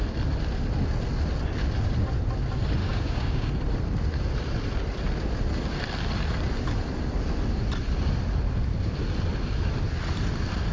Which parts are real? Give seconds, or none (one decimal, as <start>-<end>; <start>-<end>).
0.0-2.8; 3.5-10.7